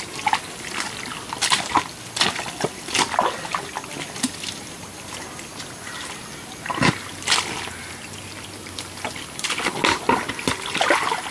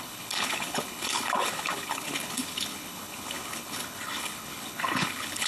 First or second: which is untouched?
first